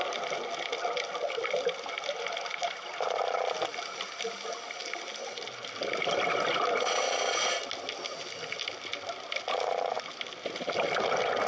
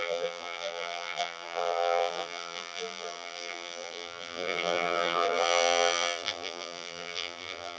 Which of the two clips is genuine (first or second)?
first